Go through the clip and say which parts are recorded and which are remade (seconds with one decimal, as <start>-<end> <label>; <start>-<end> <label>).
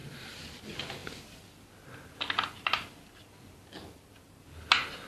0.0-0.6 remade; 0.6-5.1 recorded